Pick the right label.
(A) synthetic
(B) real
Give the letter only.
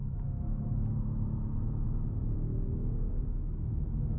A